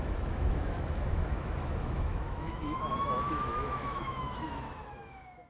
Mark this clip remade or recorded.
remade